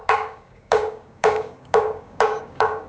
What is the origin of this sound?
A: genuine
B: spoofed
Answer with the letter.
B